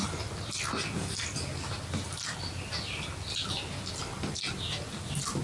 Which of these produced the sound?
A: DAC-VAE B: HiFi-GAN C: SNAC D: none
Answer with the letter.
D